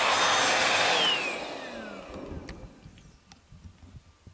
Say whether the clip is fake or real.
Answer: real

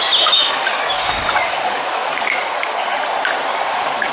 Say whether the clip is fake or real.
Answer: real